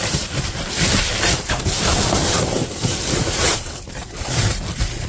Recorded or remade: remade